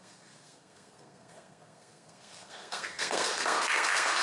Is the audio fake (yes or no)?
yes